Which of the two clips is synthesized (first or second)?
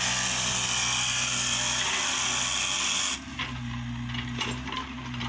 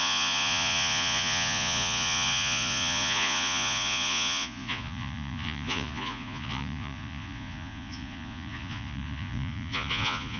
second